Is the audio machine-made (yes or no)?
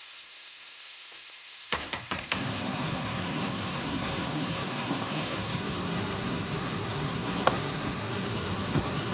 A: yes